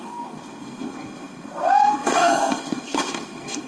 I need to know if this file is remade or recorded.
remade